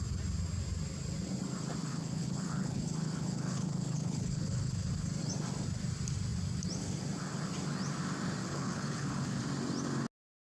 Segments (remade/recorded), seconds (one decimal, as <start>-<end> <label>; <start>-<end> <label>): 0.0-1.8 recorded; 1.8-4.9 remade; 4.9-8.4 recorded; 8.4-9.4 remade; 9.4-10.5 recorded